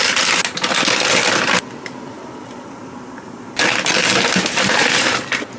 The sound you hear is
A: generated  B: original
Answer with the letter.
B